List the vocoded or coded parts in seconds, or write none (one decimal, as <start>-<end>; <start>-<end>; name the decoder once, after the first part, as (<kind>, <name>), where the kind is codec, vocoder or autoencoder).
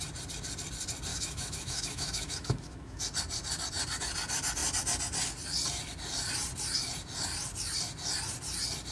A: 1.1-3.0 (autoencoder, DAC-VAE)